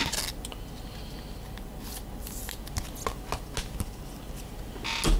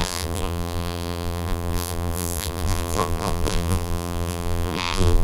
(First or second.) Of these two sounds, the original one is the first